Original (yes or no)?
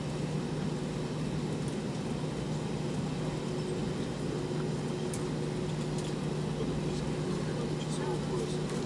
yes